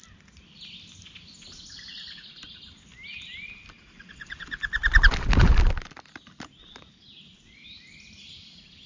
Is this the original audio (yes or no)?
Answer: yes